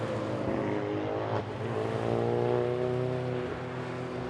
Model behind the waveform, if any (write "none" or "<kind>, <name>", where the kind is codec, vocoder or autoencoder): none